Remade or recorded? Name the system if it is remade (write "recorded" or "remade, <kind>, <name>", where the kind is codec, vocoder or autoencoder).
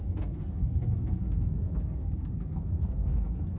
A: remade, codec, SNAC